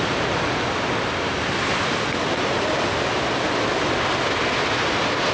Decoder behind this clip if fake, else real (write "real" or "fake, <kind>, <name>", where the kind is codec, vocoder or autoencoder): real